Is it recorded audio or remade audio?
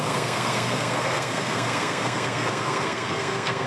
remade